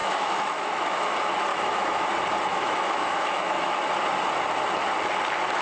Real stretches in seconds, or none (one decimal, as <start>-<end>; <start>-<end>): 1.0-1.5; 2.1-2.5; 3.8-5.6